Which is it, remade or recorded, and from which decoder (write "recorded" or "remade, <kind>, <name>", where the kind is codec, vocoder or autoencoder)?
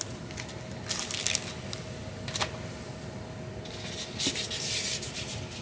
recorded